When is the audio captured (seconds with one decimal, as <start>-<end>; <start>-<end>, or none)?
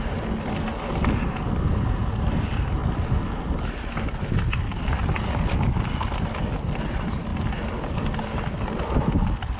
0.0-9.6